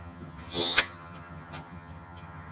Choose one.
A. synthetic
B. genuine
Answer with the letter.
A